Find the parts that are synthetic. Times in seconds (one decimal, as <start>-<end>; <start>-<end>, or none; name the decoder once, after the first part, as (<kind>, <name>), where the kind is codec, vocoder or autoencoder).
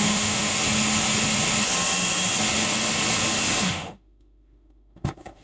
0.0-0.5 (autoencoder, DAC-VAE); 3.7-5.4